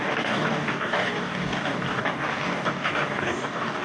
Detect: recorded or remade remade